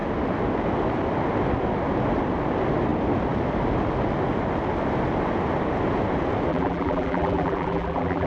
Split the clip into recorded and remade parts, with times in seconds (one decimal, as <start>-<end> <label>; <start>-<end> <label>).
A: 0.0-6.5 recorded; 6.5-8.3 remade